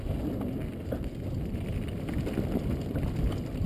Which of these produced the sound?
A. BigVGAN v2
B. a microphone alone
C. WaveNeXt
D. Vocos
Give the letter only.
B